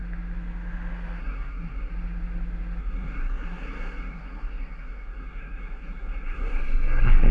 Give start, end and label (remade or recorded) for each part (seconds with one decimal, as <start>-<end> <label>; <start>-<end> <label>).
0.0-1.2 recorded; 1.2-1.9 remade; 1.9-2.8 recorded; 2.8-7.3 remade